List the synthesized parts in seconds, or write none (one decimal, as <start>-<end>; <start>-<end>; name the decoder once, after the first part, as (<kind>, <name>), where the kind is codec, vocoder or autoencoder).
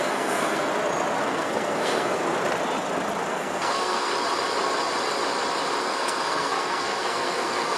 0.0-0.7 (codec, SNAC); 1.2-2.2; 3.3-4.1; 5.8-7.8